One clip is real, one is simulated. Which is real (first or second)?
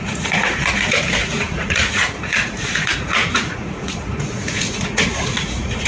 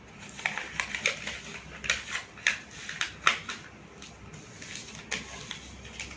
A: second